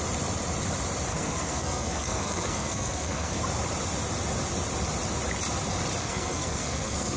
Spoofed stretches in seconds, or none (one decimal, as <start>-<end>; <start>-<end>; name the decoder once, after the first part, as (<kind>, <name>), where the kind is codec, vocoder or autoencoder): 1.1-3.4 (codec, SNAC); 6.0-7.2

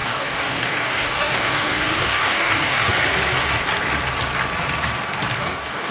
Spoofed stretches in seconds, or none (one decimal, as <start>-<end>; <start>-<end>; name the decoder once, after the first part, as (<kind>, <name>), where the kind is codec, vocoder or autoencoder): 0.0-2.9 (codec, DAC); 5.4-5.9

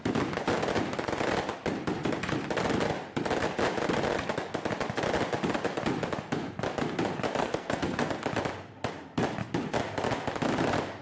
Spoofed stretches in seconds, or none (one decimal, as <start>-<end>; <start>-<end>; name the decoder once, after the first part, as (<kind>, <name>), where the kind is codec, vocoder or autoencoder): 7.4-8.1 (codec, SNAC)